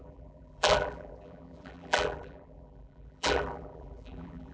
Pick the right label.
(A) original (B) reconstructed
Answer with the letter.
B